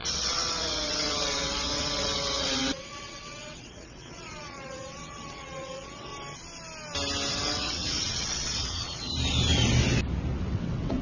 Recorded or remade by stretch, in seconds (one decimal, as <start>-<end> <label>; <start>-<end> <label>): 0.0-6.1 remade; 6.1-7.3 recorded; 7.3-9.1 remade; 9.1-10.4 recorded; 10.4-11.0 remade